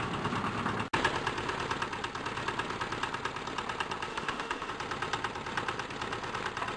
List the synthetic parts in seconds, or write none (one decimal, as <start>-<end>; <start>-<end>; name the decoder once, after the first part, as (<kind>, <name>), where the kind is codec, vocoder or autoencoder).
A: 4.1-4.7 (autoencoder, DAC-VAE)